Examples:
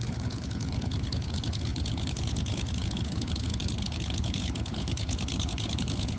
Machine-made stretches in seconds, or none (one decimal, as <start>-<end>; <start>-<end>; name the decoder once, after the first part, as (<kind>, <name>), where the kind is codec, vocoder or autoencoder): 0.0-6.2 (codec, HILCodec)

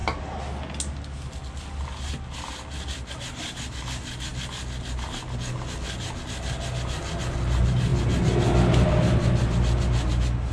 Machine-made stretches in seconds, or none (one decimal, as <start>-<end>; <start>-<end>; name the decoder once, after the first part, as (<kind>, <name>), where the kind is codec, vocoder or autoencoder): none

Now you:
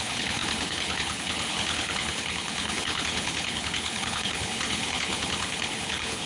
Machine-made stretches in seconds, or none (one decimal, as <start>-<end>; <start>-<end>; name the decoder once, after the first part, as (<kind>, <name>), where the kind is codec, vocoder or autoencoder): 0.0-6.3 (codec, HILCodec)

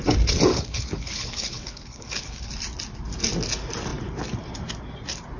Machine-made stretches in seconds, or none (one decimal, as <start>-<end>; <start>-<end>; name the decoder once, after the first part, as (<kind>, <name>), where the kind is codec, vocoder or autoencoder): 0.5-2.5 (codec, HILCodec)

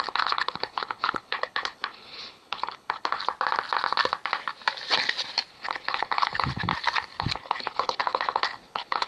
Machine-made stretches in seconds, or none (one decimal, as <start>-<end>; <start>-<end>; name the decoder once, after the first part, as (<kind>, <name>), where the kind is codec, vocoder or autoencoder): 0.0-3.2 (codec, HILCodec); 5.5-6.7; 7.2-9.1

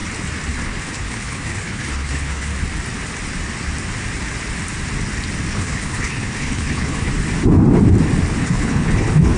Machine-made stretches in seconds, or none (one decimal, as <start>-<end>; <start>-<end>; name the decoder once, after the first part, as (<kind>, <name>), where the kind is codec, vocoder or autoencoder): 0.5-2.5 (codec, HILCodec); 5.5-7.1; 8.4-9.4